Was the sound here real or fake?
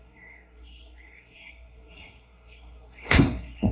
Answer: fake